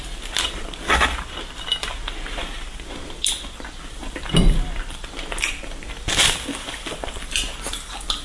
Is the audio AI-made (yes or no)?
yes